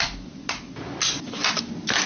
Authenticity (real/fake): real